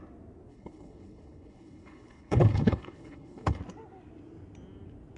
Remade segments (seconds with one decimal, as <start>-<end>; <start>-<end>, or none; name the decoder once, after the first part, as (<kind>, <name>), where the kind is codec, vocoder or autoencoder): 0.5-3.6 (codec, HILCodec)